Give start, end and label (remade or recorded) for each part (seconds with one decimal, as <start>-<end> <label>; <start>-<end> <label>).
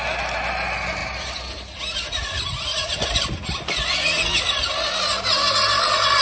0.0-6.2 recorded